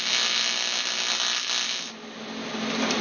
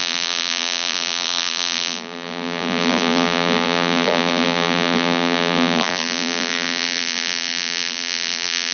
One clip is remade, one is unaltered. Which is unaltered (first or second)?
first